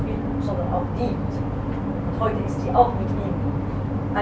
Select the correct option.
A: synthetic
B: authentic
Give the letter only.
B